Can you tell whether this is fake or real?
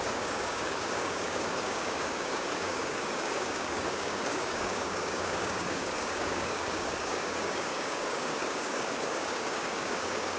fake